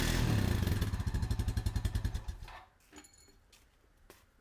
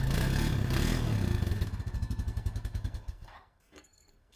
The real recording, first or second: first